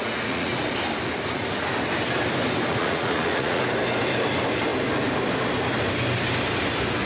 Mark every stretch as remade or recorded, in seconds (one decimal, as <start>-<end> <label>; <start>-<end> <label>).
0.0-0.7 remade; 0.7-2.7 recorded; 2.7-3.6 remade; 3.6-7.1 recorded